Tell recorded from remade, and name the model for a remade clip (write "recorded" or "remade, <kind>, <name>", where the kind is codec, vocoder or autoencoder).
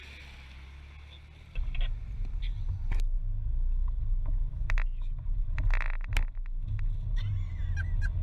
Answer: recorded